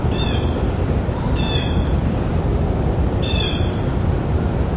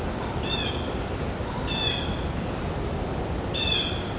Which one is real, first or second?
second